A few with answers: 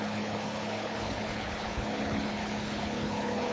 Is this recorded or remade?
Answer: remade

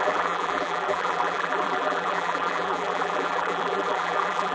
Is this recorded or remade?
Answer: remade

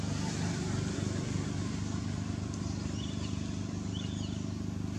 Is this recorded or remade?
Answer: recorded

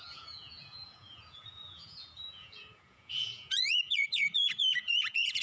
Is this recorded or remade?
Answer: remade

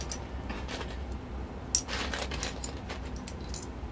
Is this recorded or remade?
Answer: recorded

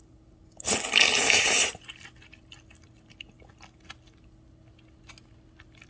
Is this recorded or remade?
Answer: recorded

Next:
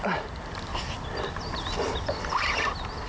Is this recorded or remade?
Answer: recorded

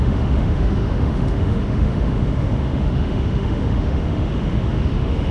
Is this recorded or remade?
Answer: remade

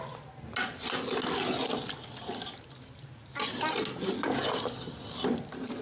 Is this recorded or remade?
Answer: recorded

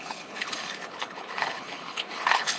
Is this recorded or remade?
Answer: remade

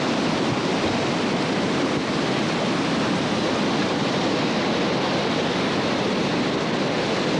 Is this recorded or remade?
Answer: recorded